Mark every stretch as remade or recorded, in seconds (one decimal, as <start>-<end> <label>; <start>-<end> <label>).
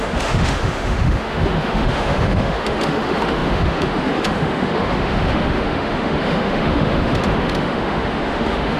0.0-8.8 remade